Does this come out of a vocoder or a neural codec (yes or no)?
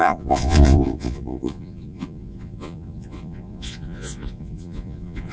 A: yes